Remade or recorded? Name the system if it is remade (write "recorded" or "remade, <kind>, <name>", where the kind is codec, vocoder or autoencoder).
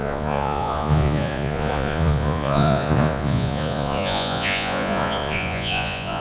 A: remade, vocoder, Vocos